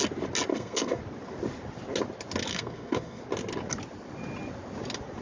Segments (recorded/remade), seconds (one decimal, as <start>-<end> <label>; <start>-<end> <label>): 0.0-0.5 recorded; 0.5-1.0 remade; 1.0-2.5 recorded; 2.5-3.2 remade; 3.2-5.2 recorded